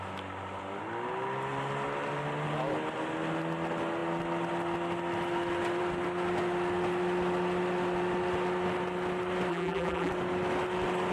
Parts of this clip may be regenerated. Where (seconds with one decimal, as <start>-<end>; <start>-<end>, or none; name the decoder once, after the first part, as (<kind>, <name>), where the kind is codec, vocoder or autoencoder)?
9.5-10.1 (vocoder, BigVGAN v2)